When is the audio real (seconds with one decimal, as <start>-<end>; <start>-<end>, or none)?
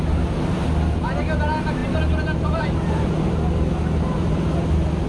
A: 0.0-5.1